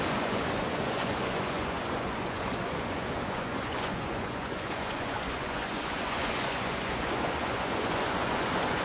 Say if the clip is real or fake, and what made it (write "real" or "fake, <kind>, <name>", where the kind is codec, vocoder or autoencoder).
fake, vocoder, Vocos